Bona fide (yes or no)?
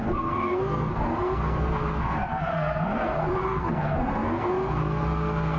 no